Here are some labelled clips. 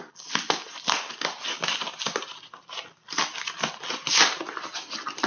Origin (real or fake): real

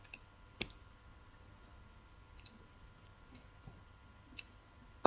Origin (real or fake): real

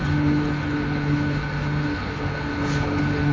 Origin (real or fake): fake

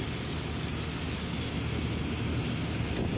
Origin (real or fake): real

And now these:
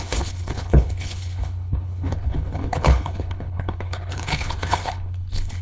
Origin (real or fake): fake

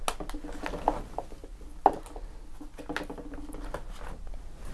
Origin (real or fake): real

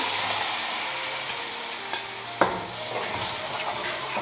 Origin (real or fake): real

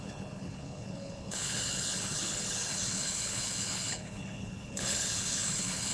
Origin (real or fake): fake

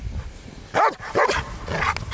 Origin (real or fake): real